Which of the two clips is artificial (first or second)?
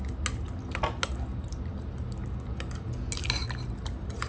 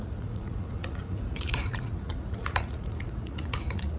second